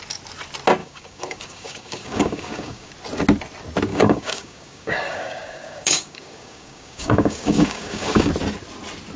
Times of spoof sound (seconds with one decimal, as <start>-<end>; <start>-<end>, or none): 0.8-2.9; 3.9-8.3